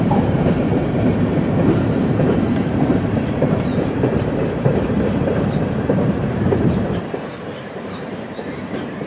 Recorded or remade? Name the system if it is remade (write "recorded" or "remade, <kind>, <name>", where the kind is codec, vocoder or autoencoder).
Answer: remade, vocoder, BigVGAN v2